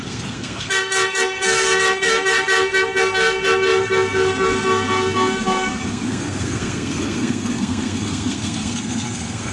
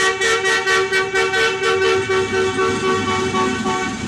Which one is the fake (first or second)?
first